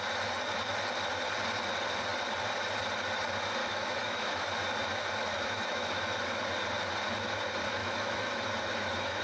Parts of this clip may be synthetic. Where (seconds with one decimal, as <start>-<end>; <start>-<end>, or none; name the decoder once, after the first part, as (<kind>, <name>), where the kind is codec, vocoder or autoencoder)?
3.6-4.5 (autoencoder, DAC-VAE); 5.3-6.2; 7.8-9.2